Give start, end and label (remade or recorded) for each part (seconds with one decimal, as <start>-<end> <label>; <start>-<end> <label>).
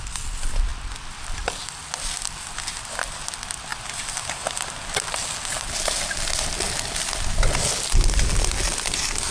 0.0-9.3 recorded